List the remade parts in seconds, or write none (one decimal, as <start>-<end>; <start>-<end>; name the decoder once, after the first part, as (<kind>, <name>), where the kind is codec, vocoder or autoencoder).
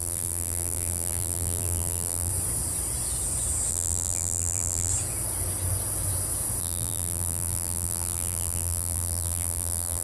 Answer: 0.0-2.3 (vocoder, BigVGAN v2); 3.7-4.9; 6.6-10.0